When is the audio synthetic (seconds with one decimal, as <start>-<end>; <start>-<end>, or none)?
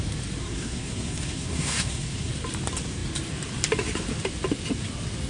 0.4-2.3